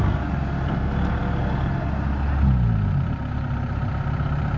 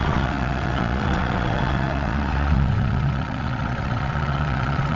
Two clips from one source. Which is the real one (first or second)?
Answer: first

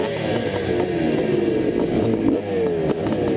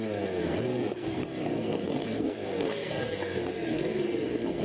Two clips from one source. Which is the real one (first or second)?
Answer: first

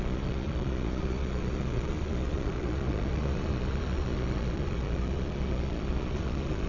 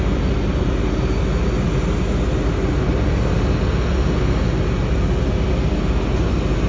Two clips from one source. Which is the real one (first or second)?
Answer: second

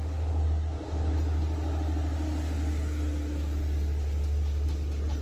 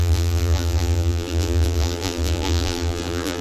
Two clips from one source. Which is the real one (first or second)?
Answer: first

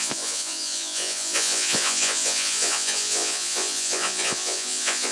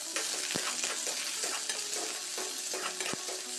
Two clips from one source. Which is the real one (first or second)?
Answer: second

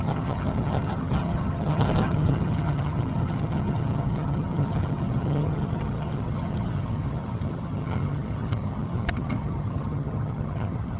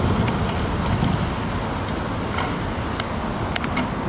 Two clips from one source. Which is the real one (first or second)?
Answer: second